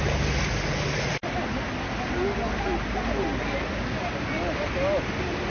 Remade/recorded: recorded